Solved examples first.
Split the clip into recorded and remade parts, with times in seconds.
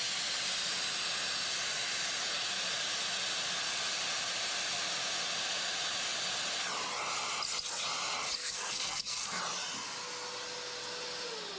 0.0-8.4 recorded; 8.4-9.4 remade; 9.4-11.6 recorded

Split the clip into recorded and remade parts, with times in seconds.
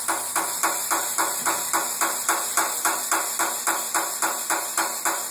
0.0-5.3 recorded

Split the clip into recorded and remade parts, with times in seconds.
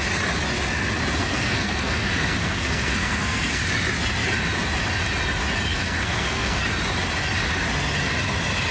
0.0-1.2 recorded; 1.2-3.6 remade; 3.6-5.7 recorded; 5.7-6.6 remade; 6.6-8.7 recorded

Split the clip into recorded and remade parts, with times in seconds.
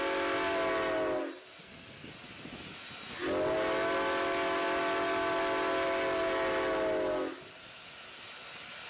0.0-1.6 recorded; 1.6-2.1 remade; 2.1-8.9 recorded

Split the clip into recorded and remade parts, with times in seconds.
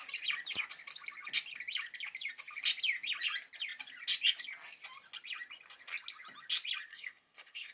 0.0-6.9 recorded; 6.9-7.7 remade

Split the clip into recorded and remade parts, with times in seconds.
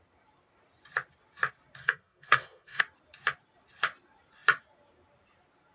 0.0-1.8 recorded; 1.8-2.8 remade; 2.8-5.7 recorded